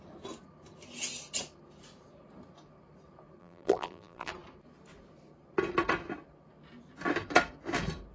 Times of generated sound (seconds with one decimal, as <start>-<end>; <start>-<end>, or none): 3.4-4.3